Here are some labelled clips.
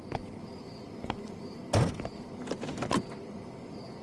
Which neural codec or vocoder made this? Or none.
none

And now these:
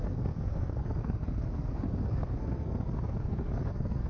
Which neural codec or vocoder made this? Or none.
codec, SNAC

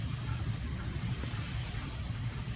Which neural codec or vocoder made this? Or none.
none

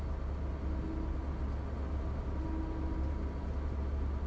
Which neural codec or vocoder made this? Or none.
none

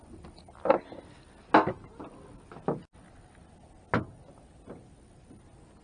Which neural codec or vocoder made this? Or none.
none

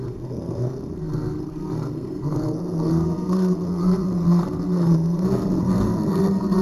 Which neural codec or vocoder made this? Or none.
codec, SNAC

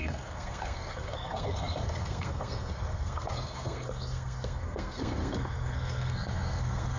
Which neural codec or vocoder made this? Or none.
codec, SNAC